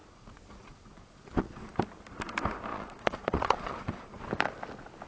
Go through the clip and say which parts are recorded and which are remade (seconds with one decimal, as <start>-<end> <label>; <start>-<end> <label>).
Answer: 0.0-1.7 remade; 1.7-2.7 recorded; 2.7-4.2 remade; 4.2-5.1 recorded